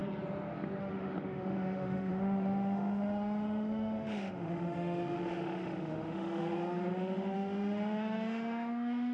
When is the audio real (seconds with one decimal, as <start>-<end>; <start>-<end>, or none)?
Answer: 0.0-0.8